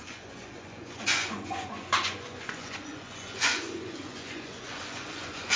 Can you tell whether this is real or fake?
fake